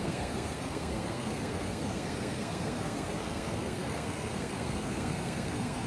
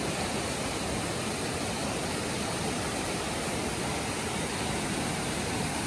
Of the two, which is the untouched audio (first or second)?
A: second